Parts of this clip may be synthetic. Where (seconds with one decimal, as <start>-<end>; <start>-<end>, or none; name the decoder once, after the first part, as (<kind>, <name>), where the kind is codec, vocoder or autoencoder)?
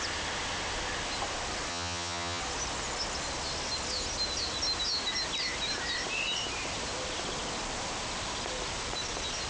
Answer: 1.7-2.4 (vocoder, HiFi-GAN)